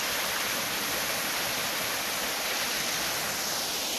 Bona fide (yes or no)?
yes